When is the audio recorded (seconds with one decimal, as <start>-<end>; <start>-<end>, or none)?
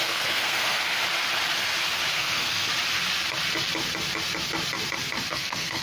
1.0-2.1; 2.7-5.3